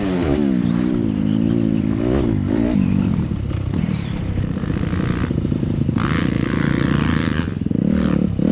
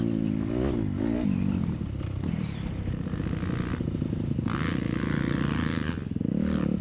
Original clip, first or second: second